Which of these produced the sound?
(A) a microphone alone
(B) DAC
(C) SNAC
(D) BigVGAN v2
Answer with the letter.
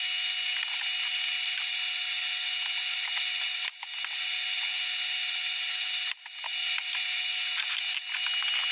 A